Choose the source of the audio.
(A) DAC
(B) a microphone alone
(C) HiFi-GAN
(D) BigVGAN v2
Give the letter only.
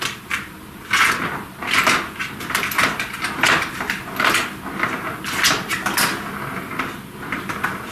B